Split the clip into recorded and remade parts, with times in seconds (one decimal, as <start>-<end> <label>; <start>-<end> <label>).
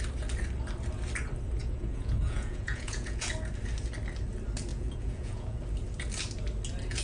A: 0.0-1.6 recorded; 1.6-3.3 remade; 3.3-4.7 recorded; 4.7-5.6 remade; 5.6-7.0 recorded